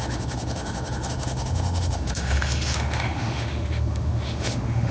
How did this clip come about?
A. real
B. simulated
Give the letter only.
B